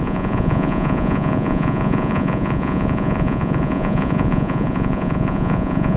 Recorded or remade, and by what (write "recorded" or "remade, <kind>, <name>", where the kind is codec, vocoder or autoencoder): remade, vocoder, Vocos